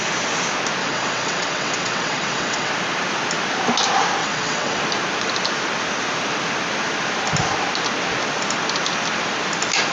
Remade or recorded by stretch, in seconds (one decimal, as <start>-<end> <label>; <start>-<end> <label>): 0.0-0.8 recorded; 0.8-2.7 remade; 2.7-4.2 recorded; 4.2-4.8 remade; 4.8-9.9 recorded